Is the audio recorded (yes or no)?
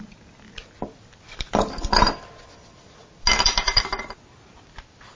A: yes